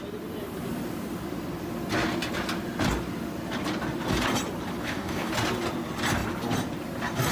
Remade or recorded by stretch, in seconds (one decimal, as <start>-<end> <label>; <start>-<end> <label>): 0.0-4.8 recorded; 4.8-5.3 remade; 5.3-7.3 recorded